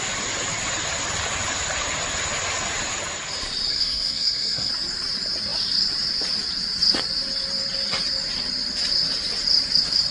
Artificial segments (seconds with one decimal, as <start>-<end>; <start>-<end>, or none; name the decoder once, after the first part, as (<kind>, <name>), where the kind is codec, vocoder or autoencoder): 3.7-4.7 (codec, SNAC)

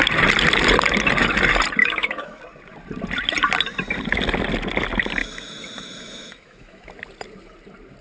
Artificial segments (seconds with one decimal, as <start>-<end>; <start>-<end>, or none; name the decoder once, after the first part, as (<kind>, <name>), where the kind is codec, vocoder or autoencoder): 1.8-2.4 (autoencoder, DAC-VAE); 5.2-6.9

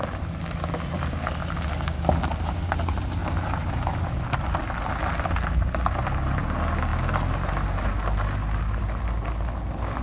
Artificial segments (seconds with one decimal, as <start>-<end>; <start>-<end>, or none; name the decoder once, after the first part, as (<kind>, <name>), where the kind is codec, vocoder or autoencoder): none

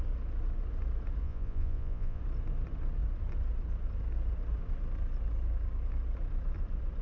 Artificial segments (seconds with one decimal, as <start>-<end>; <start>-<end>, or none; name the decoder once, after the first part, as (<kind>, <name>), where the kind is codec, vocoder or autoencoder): 1.2-2.2 (vocoder, Vocos)

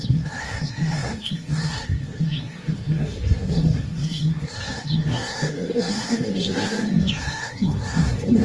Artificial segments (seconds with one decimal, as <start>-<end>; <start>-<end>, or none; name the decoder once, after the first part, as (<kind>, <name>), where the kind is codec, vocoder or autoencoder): 0.0-8.4 (codec, SNAC)

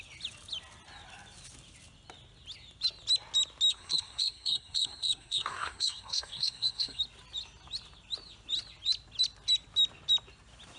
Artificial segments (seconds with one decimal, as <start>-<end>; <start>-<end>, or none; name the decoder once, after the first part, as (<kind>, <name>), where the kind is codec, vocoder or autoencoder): 3.7-7.0 (codec, SNAC)